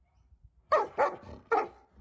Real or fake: real